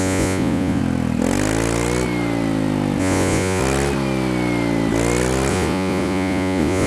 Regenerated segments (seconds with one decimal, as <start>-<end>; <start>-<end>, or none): 0.0-0.8; 3.0-3.6; 5.5-6.9